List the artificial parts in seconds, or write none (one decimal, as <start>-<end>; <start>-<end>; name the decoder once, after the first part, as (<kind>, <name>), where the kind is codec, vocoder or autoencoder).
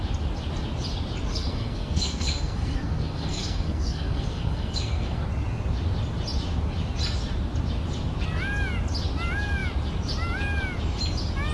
1.3-5.2 (codec, SNAC)